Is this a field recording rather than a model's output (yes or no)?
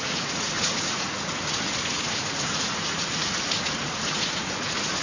no